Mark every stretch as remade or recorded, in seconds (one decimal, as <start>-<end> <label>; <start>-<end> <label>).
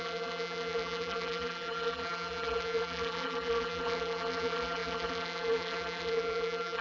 0.0-6.8 remade